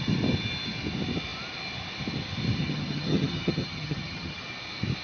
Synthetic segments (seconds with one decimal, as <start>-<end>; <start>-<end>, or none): 2.6-4.4